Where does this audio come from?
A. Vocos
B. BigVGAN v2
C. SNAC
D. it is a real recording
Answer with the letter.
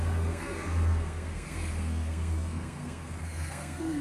C